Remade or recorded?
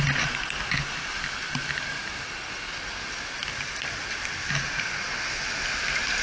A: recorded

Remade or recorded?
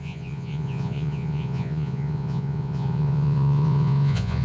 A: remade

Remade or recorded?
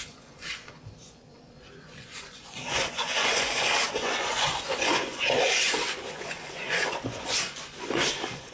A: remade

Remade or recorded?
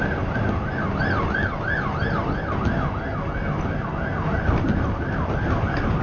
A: recorded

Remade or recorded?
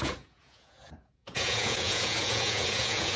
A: remade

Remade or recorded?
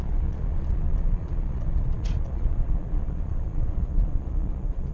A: remade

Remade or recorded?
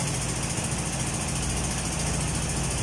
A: recorded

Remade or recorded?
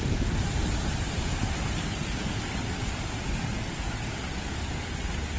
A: recorded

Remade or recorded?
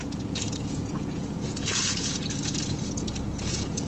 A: remade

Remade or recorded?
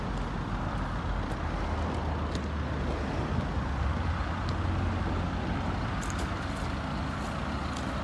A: recorded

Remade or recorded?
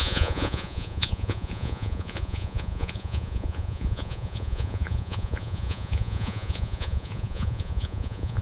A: remade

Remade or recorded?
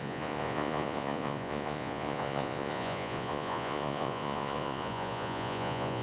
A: remade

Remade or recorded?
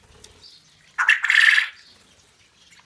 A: recorded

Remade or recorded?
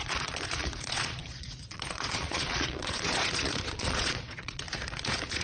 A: remade